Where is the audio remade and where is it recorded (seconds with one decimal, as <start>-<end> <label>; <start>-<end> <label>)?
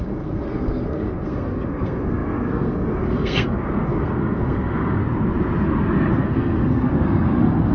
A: 0.0-5.0 remade; 5.0-6.1 recorded; 6.1-7.7 remade